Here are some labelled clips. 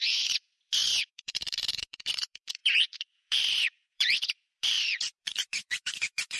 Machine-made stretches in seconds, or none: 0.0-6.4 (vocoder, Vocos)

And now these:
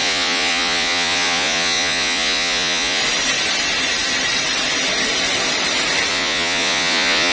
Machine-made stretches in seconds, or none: 0.0-3.0 (vocoder, Vocos); 6.1-7.3

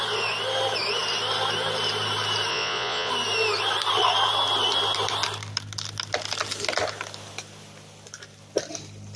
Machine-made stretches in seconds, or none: 2.5-3.1 (vocoder, Vocos)

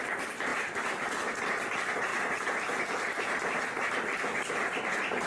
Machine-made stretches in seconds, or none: none

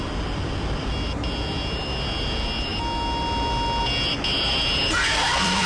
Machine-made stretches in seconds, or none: none

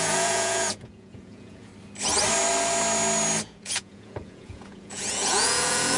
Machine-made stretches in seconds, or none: 0.0-1.7 (vocoder, Vocos); 3.4-6.0

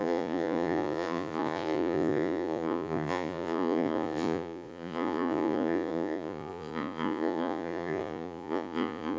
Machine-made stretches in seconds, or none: 0.0-9.2 (vocoder, Vocos)

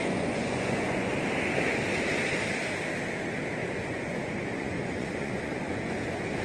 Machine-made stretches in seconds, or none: 0.0-1.1 (vocoder, Vocos); 3.6-6.4